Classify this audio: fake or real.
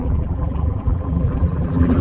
fake